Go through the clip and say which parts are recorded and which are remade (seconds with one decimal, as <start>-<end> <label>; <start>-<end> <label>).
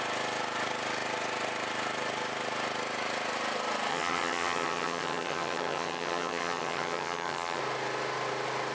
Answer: 0.0-3.9 recorded; 3.9-7.6 remade; 7.6-8.7 recorded